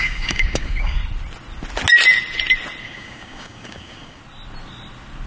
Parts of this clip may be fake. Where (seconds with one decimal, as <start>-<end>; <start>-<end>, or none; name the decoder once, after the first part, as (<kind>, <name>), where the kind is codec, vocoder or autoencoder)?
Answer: 0.0-1.0 (codec, DAC); 2.8-4.2